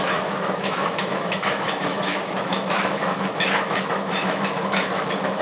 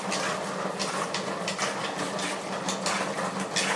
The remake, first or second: first